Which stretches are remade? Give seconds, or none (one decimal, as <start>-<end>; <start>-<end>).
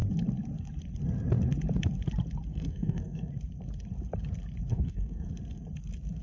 2.5-3.3; 4.7-5.3